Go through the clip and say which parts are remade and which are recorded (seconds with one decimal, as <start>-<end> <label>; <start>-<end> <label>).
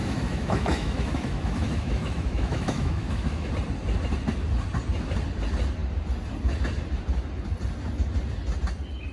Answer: 0.0-3.5 remade; 3.5-9.1 recorded